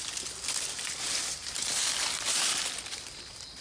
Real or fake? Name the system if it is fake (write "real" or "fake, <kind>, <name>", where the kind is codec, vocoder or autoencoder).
real